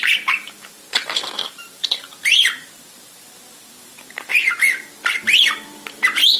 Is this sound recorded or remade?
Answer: remade